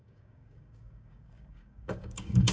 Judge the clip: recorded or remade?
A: remade